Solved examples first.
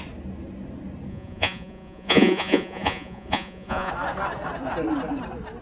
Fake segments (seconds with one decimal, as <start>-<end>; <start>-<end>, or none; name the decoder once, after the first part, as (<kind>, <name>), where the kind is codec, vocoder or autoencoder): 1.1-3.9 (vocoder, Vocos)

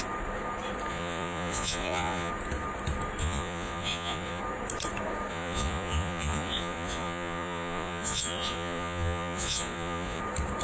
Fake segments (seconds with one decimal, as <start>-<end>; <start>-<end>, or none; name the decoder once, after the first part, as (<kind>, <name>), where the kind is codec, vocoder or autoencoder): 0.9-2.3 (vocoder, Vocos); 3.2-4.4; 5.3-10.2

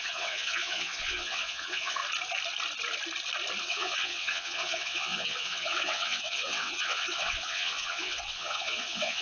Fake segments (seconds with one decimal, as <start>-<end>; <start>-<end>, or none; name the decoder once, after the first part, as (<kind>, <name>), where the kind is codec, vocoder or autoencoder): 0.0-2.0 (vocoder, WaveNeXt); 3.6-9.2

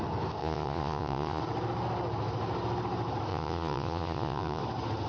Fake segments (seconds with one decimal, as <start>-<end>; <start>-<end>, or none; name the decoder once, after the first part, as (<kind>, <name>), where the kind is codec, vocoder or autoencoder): 0.4-1.4 (vocoder, Vocos); 3.3-4.6

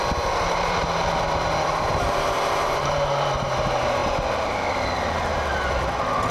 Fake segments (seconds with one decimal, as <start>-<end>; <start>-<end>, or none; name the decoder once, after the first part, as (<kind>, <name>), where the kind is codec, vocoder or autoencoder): 0.0-4.0 (vocoder, BigVGAN v2)

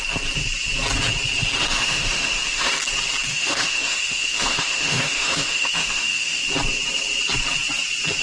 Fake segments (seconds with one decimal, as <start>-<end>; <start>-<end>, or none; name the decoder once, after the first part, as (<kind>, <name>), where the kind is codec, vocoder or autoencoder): 1.6-2.7 (autoencoder, DAC-VAE); 3.3-6.4

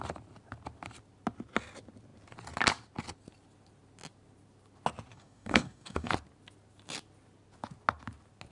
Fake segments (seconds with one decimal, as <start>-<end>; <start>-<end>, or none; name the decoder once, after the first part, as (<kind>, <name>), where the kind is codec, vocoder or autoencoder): 5.1-6.1 (codec, DAC)